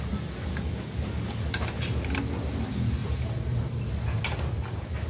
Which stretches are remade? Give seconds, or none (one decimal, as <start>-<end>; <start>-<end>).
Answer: 0.5-1.3